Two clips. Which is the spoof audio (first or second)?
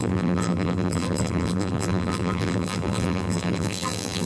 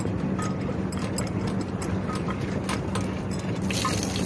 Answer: first